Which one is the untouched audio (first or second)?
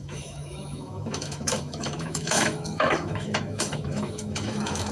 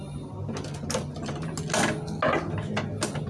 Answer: second